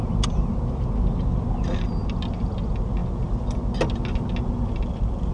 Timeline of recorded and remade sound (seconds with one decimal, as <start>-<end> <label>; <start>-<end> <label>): 0.0-5.3 recorded